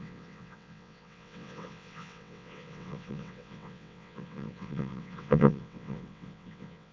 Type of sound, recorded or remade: remade